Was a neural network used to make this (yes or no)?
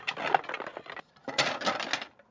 no